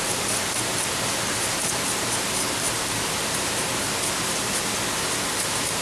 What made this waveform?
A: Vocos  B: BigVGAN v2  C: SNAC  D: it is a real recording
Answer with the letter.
D